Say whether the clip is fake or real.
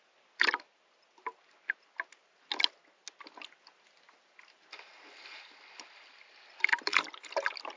real